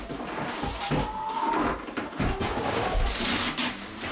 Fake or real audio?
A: real